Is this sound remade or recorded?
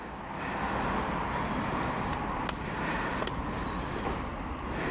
recorded